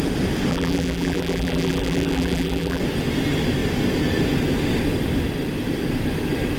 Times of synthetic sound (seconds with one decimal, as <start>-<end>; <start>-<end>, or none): 0.5-2.8